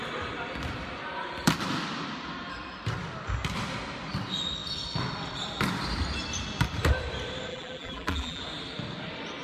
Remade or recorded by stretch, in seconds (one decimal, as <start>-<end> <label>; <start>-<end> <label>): 0.0-7.5 recorded; 7.5-8.4 remade; 8.4-9.4 recorded